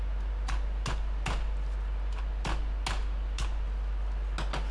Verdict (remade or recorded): recorded